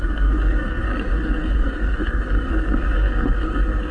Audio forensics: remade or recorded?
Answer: remade